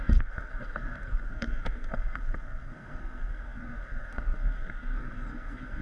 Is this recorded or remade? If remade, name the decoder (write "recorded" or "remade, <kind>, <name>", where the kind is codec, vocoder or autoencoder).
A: remade, codec, SNAC